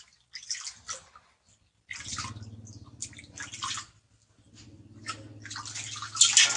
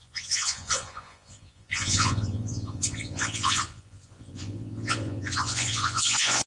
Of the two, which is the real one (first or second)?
first